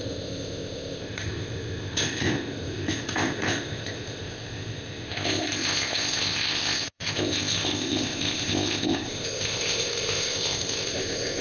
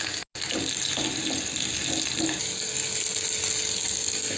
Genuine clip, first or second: second